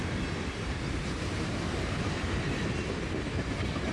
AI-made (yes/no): yes